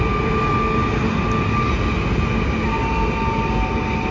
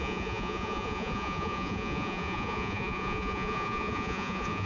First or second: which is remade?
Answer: second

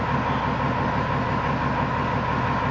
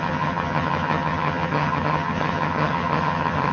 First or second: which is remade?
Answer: second